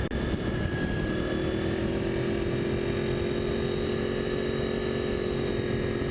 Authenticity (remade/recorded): recorded